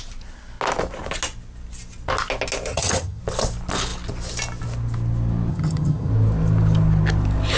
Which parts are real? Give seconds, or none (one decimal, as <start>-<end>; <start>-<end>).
0.0-2.7; 3.2-5.5; 6.1-7.6